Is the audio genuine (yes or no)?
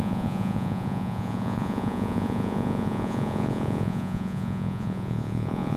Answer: no